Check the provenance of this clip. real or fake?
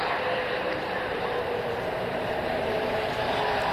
fake